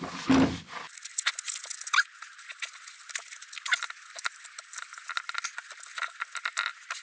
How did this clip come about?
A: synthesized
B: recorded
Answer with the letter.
B